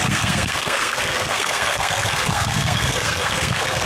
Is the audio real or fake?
fake